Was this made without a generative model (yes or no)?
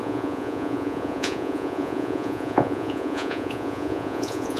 no